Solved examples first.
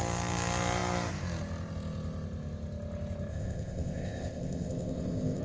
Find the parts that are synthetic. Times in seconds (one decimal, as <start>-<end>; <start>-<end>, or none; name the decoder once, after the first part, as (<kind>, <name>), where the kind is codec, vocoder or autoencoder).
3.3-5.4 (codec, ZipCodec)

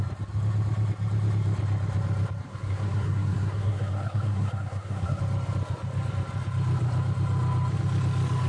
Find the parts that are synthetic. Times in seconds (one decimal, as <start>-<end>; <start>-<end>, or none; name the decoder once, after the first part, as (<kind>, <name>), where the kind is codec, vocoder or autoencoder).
2.5-5.2 (codec, SNAC)

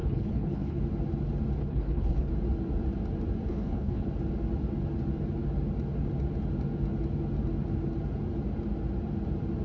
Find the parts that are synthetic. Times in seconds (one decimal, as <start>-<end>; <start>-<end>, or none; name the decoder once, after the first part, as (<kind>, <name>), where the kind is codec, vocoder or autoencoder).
0.0-0.8 (codec, HILCodec); 1.6-2.3; 3.5-4.1

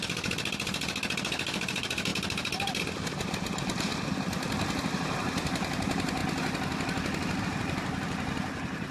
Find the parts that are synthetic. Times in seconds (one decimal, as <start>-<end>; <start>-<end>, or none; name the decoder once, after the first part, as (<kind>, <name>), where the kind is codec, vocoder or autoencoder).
0.0-3.9 (vocoder, BigVGAN v2); 4.8-6.2; 7.4-8.9

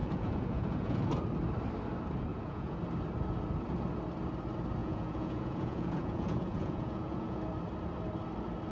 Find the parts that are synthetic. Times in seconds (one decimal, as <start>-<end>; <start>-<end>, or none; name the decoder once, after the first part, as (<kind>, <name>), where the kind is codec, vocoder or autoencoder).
0.0-1.1 (vocoder, Vocos); 2.3-2.8; 4.8-7.4

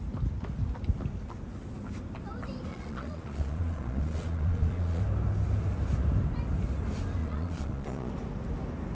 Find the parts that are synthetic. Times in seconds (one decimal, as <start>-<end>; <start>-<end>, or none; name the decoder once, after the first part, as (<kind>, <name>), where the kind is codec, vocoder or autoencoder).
2.7-5.0 (vocoder, Vocos); 7.2-8.1

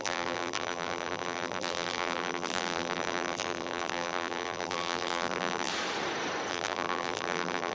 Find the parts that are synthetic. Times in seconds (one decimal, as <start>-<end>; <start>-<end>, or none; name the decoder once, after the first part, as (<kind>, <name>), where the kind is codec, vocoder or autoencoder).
0.0-5.7 (vocoder, BigVGAN v2); 6.5-7.7

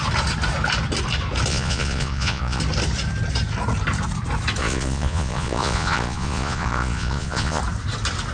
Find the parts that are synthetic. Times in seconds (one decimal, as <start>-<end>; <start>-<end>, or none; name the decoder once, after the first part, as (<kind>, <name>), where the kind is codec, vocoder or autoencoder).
1.5-2.6 (vocoder, Vocos); 4.6-7.6